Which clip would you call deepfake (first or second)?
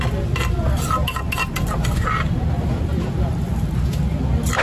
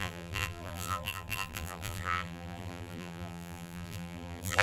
second